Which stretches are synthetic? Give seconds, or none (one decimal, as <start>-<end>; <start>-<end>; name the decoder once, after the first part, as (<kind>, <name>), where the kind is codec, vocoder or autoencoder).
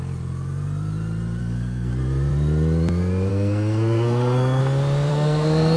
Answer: 1.4-1.9 (codec, SNAC); 3.3-4.6; 5.1-5.8